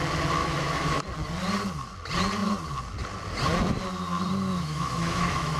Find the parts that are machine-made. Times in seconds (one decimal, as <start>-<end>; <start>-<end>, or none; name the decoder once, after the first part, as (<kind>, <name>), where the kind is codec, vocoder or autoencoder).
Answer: 0.4-1.0 (autoencoder, DAC-VAE); 4.5-5.6